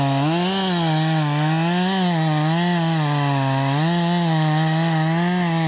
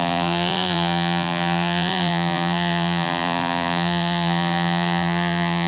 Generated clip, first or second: second